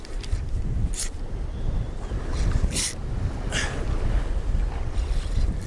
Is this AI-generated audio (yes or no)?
no